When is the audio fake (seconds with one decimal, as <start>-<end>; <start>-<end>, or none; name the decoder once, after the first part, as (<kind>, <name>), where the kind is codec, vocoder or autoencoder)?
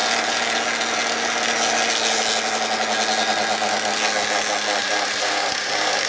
4.8-6.1 (vocoder, BigVGAN v2)